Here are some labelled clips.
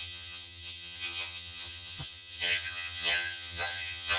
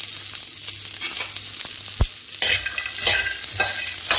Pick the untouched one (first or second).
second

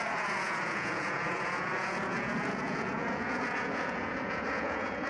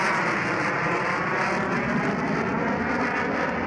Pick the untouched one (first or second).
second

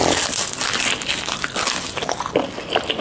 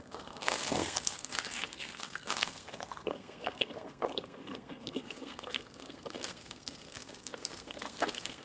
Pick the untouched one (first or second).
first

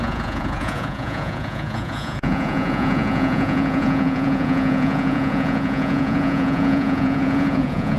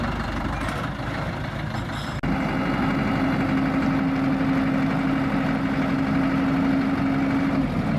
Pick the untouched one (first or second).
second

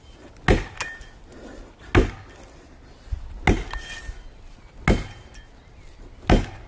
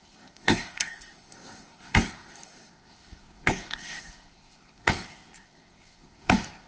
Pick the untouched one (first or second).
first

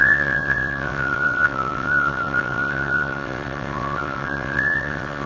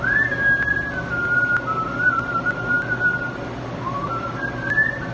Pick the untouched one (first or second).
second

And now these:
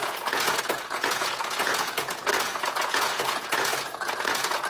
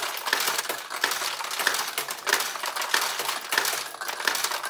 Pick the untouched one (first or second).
second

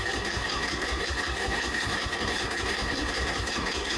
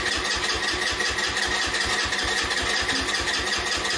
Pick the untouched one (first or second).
second